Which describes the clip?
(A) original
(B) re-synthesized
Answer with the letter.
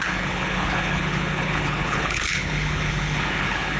B